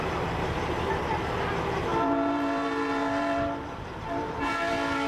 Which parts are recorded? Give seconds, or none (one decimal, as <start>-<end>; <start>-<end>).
0.0-1.9